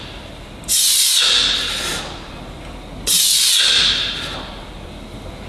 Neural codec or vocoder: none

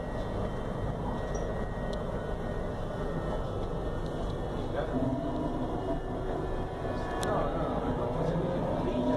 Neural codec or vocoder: none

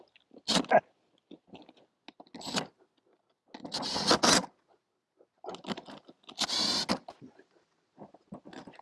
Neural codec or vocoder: none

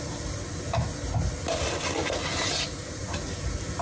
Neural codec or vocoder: none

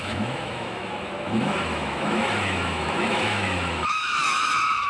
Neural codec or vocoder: autoencoder, DAC-VAE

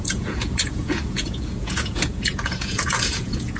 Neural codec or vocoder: vocoder, Vocos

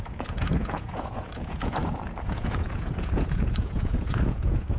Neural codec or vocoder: vocoder, Vocos